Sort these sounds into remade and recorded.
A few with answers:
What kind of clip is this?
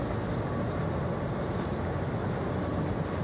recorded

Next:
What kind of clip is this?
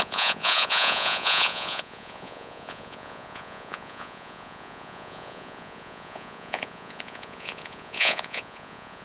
remade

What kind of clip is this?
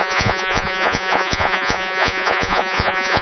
remade